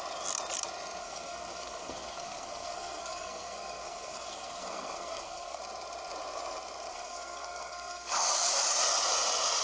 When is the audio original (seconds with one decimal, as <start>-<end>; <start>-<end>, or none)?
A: 0.0-1.0; 5.6-6.9; 8.5-9.6